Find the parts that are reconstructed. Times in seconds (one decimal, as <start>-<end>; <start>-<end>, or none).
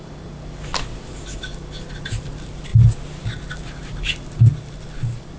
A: none